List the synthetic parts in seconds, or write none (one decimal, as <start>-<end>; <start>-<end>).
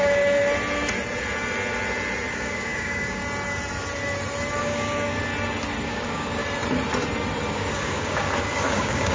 0.0-0.4; 2.3-3.2; 4.6-5.3; 5.8-6.4; 7.5-9.1